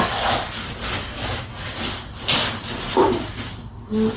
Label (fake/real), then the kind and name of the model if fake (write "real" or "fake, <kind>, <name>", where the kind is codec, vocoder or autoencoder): real